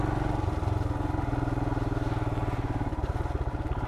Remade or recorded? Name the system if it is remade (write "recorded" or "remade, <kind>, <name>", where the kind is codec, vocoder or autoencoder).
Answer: recorded